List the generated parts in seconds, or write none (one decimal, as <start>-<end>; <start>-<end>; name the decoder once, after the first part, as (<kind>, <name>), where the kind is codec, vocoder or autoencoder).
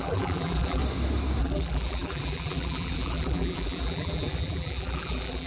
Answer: 0.0-0.8 (vocoder, BigVGAN v2); 1.4-5.5